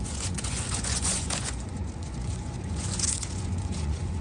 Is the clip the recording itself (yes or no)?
no